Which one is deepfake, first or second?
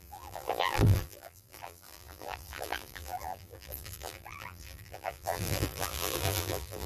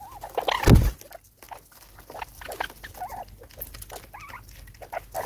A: first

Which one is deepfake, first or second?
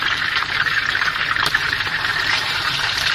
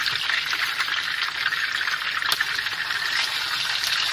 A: first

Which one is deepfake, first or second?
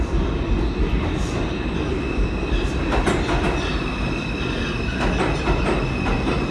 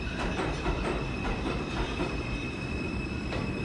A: second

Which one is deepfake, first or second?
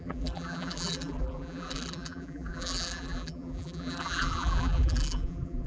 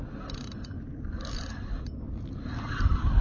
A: first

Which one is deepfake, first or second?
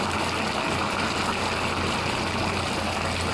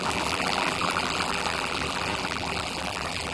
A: second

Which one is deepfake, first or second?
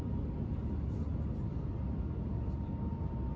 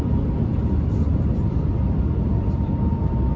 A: second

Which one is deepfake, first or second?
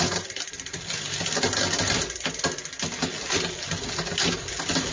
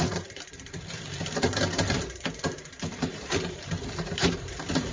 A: second